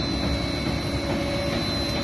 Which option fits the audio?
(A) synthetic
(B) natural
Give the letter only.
B